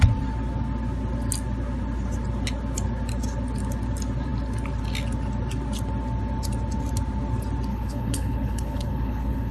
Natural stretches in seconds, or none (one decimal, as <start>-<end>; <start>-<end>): 0.0-7.7